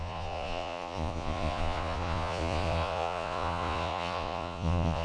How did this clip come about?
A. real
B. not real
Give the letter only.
B